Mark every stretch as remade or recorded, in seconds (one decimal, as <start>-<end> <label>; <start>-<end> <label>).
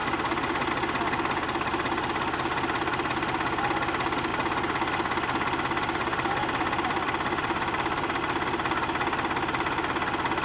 0.0-1.7 recorded; 1.7-3.1 remade; 3.1-4.3 recorded; 4.3-8.2 remade; 8.2-10.4 recorded